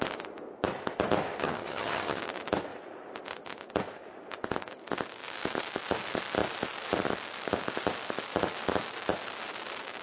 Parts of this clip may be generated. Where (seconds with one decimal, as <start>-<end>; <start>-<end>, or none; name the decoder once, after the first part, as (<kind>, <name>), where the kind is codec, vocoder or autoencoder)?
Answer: 1.4-2.2 (vocoder, HiFi-GAN)